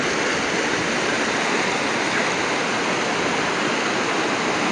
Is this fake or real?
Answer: real